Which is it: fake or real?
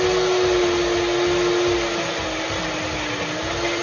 real